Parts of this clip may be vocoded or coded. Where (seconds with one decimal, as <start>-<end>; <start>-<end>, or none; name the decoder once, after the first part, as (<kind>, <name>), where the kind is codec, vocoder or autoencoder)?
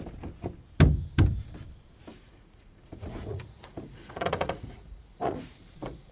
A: 2.1-6.1 (vocoder, Vocos)